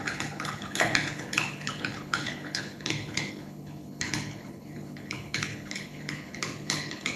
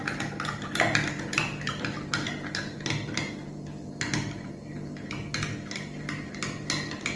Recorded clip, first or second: second